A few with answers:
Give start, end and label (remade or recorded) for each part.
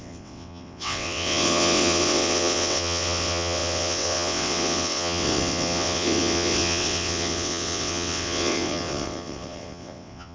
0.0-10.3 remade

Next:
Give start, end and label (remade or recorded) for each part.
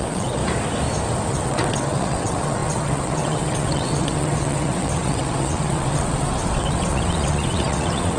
0.0-0.4 remade; 0.4-1.3 recorded; 1.3-8.2 remade